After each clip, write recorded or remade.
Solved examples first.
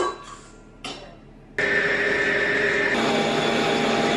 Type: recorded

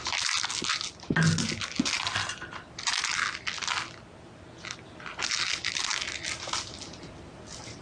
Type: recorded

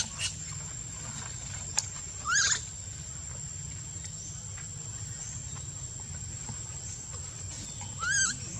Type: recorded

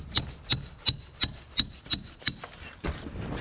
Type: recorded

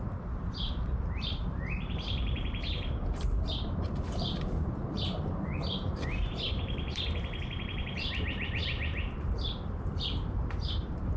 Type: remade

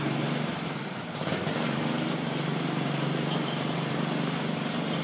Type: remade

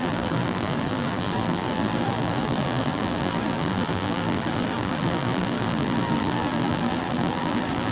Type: remade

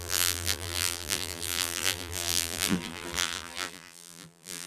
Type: remade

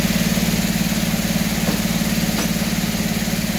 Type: recorded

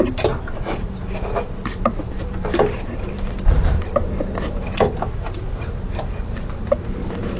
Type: remade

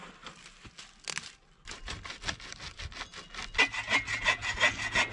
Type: recorded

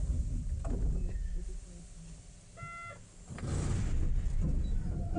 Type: recorded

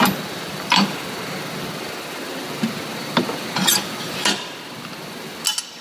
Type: recorded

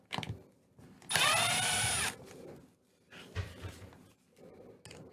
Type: recorded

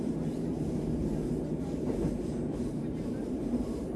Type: remade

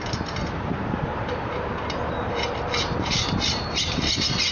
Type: remade